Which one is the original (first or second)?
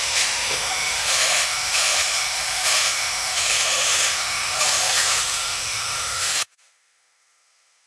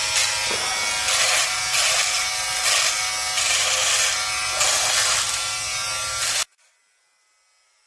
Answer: second